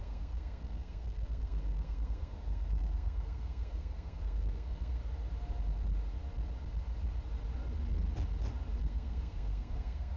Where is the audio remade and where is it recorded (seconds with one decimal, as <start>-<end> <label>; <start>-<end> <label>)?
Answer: 0.0-5.0 remade; 5.0-8.8 recorded; 8.8-10.2 remade